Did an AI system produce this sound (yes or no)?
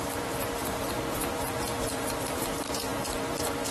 yes